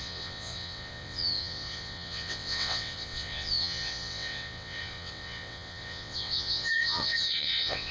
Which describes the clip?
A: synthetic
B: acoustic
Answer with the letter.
A